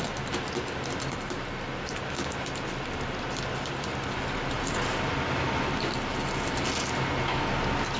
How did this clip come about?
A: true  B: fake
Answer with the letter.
A